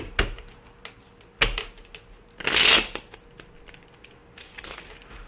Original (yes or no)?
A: yes